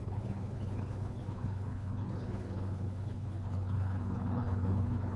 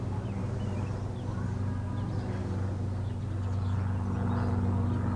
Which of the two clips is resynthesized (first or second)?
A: first